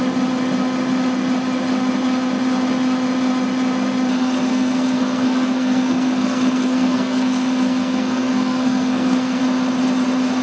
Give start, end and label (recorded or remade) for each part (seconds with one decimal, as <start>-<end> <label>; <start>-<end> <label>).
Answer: 0.0-4.5 recorded; 4.5-9.4 remade; 9.4-10.4 recorded